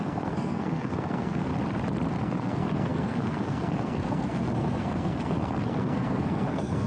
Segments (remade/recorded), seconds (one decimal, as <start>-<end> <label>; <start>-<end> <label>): 0.0-1.5 remade; 1.5-2.2 recorded; 2.2-6.9 remade